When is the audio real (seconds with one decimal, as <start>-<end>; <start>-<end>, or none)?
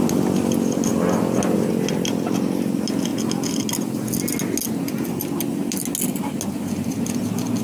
0.0-7.6